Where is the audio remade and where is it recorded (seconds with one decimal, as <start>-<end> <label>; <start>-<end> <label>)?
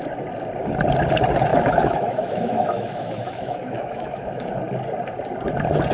0.0-1.5 recorded; 1.5-4.6 remade; 4.6-5.9 recorded